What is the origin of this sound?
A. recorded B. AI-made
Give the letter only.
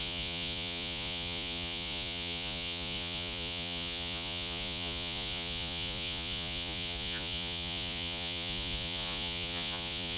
B